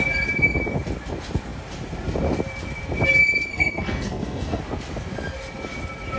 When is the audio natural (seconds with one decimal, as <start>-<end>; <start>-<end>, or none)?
0.0-3.5; 4.6-6.2